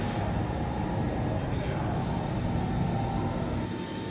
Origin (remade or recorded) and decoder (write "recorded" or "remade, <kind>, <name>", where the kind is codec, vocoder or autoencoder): recorded